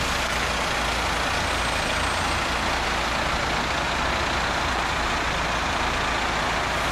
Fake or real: real